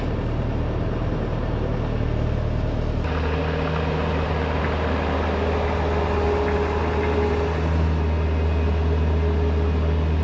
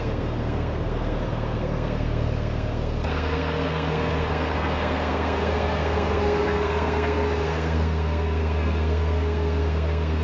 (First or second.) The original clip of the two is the first